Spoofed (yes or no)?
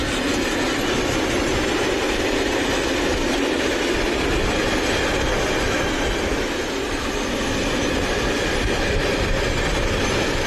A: no